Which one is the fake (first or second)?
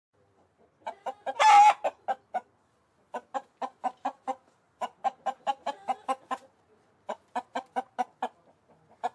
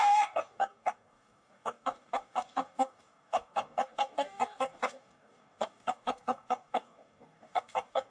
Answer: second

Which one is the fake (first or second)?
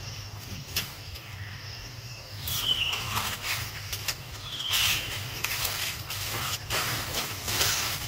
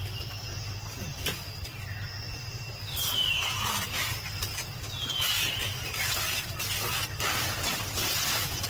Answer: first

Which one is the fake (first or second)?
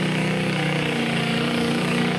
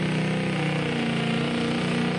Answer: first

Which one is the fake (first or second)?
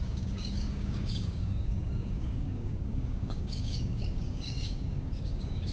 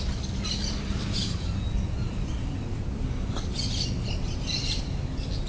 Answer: first